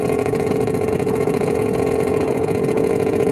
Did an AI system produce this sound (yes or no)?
yes